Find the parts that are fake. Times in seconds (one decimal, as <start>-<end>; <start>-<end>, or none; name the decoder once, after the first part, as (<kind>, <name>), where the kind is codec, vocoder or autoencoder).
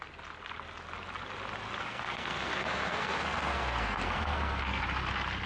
1.8-4.8 (codec, SNAC)